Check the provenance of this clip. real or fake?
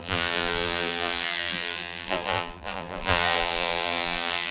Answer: fake